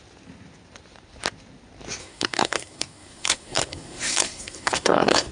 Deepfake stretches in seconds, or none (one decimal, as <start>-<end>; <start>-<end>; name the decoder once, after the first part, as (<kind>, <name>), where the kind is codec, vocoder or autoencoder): 2.0-5.3 (codec, SNAC)